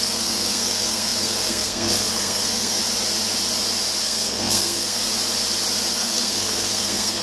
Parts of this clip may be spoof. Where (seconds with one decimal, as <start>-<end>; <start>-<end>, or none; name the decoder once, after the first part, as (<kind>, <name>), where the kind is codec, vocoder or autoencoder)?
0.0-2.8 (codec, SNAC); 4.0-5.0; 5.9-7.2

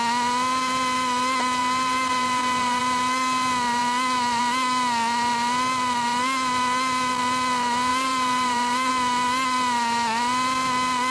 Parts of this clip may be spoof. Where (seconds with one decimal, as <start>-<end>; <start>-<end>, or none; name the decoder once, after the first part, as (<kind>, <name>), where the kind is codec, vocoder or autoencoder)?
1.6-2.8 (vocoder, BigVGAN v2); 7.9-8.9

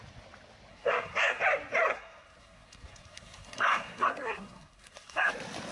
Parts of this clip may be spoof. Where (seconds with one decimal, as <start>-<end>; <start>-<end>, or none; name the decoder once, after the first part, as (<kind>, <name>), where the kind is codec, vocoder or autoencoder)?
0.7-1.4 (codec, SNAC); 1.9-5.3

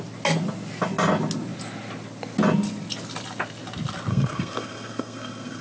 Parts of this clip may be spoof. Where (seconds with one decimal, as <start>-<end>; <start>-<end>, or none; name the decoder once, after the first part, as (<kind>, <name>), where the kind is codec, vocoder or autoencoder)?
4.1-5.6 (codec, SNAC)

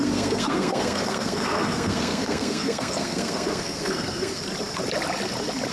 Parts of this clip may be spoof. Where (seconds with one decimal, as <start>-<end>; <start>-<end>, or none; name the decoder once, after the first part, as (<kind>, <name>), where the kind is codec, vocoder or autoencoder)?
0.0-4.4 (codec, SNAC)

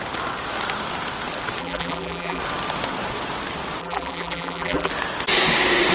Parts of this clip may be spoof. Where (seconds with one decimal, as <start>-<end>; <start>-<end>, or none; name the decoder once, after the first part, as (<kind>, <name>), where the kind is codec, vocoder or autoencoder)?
1.6-2.4 (vocoder, BigVGAN v2); 3.8-4.9

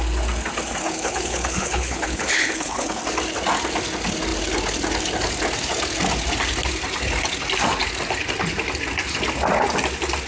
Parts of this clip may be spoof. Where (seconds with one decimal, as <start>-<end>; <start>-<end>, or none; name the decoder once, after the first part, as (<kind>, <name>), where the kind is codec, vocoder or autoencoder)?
0.8-3.0 (codec, HILCodec)

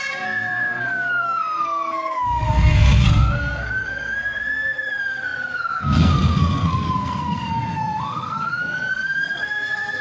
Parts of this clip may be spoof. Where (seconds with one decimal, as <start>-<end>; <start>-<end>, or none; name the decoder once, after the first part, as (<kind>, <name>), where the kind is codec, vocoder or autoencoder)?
0.0-10.0 (codec, SNAC)